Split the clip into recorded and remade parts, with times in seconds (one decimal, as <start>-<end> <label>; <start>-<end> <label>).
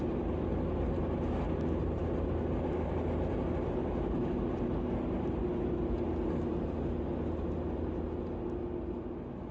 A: 0.0-9.5 recorded